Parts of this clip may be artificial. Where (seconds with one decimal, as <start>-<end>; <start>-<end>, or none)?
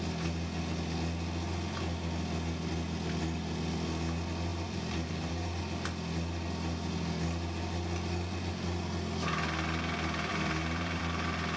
4.5-5.6; 10.3-11.0